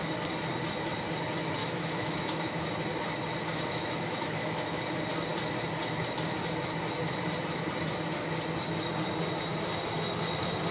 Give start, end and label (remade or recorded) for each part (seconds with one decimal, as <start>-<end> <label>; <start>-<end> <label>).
0.0-1.6 recorded; 1.6-2.7 remade; 2.7-3.5 recorded; 3.5-4.8 remade; 4.8-10.7 recorded